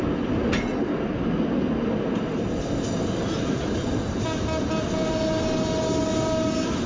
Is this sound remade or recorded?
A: recorded